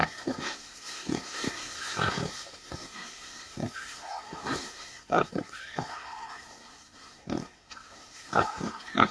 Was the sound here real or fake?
fake